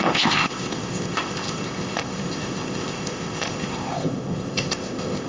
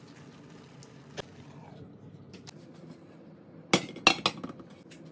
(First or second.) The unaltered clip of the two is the second